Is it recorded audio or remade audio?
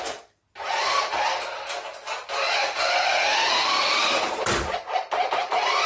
recorded